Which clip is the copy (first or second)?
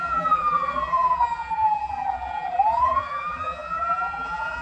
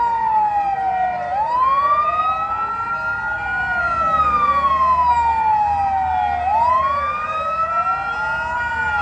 first